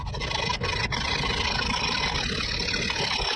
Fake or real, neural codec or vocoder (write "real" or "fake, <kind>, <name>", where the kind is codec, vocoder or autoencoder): real